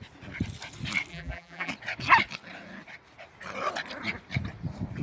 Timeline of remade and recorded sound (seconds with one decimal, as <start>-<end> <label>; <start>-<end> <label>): 0.0-1.1 recorded; 1.1-1.7 remade; 1.7-5.0 recorded